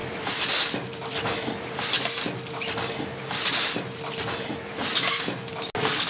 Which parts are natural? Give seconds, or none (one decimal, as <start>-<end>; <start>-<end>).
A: 0.0-6.1

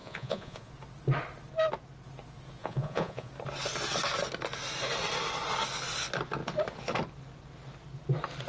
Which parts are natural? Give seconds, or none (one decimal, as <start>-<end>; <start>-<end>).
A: 0.7-2.6; 3.3-8.5

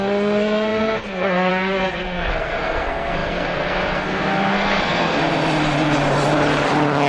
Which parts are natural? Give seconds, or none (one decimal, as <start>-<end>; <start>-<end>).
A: 5.2-7.1

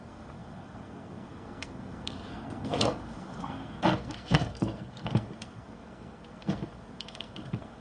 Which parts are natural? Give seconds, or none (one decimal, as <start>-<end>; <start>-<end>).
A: none

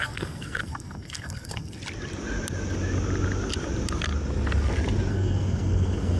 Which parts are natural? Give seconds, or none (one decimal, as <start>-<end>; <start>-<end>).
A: 1.8-5.1

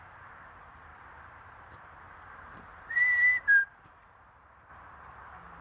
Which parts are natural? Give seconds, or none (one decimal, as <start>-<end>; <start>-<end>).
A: none

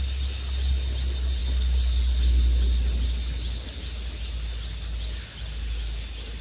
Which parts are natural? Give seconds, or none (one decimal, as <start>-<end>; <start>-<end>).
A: 0.0-6.4